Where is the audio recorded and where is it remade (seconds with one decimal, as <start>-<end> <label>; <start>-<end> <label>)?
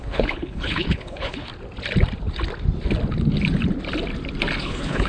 0.0-1.5 remade; 1.5-4.6 recorded; 4.6-5.1 remade